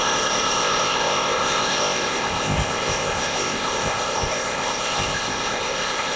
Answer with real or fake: fake